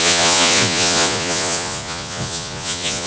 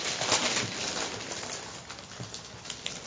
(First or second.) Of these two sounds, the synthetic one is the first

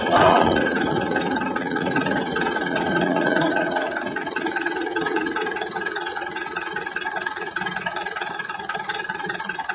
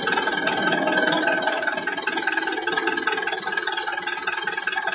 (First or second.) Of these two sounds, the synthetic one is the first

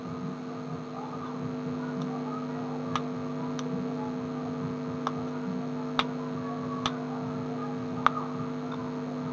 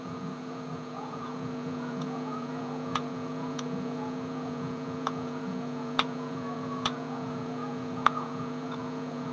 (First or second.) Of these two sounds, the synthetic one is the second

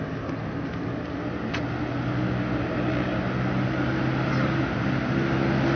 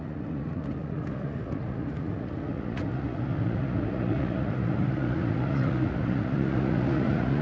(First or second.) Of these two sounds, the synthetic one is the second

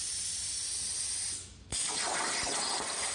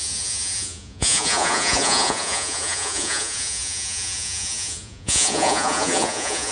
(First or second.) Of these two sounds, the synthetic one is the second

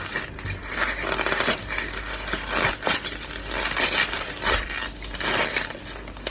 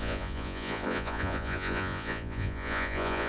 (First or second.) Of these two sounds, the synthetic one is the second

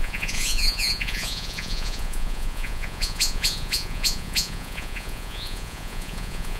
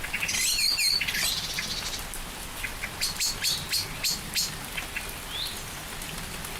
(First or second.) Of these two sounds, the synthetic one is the first